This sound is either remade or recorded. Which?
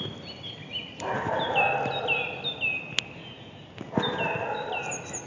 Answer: recorded